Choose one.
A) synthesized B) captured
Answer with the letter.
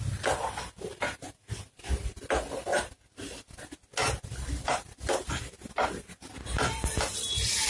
B